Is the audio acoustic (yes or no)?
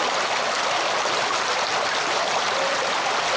yes